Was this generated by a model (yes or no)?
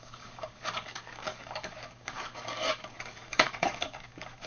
yes